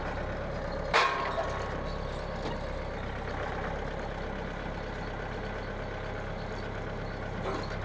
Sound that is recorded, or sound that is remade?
recorded